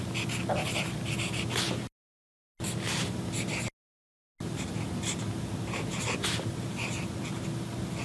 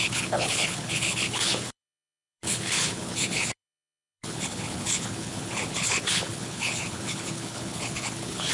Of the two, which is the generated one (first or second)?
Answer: second